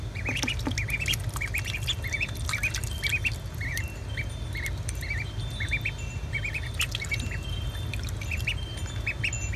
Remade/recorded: recorded